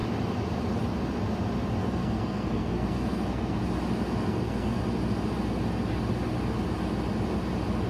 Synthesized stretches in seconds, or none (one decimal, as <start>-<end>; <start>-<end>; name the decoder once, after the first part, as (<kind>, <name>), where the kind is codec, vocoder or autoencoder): 1.8-3.6 (codec, SNAC); 4.2-4.8